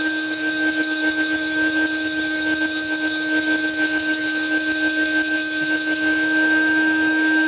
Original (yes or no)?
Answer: no